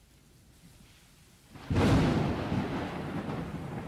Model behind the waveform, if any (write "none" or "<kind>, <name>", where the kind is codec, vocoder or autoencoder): none